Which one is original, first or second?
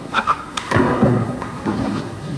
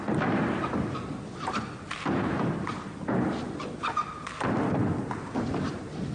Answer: second